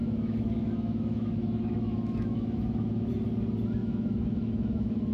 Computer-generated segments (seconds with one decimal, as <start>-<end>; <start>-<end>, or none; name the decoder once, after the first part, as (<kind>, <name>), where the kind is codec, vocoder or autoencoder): 0.0-3.1 (autoencoder, DAC-VAE); 3.8-5.1

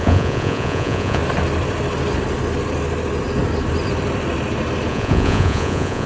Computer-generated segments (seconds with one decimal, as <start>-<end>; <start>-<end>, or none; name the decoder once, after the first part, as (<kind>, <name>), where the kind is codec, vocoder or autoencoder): 0.0-1.2 (vocoder, Vocos); 4.9-6.1

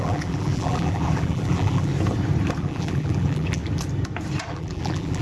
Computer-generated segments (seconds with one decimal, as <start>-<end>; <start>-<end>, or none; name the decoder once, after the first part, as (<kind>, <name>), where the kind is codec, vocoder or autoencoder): 0.0-1.9 (vocoder, BigVGAN v2); 2.6-3.6; 4.5-5.2

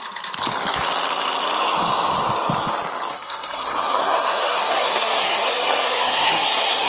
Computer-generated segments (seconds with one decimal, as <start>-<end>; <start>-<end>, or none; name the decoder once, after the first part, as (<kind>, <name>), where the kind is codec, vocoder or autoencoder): 3.1-6.9 (codec, SNAC)